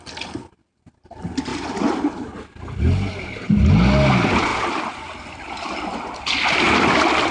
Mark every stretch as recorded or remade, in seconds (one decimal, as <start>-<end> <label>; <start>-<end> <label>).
0.0-7.3 recorded